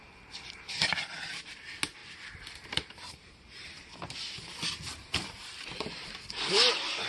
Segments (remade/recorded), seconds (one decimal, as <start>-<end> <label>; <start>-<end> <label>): 0.0-2.0 recorded; 2.0-3.9 remade; 3.9-5.0 recorded; 5.0-5.5 remade; 5.5-7.1 recorded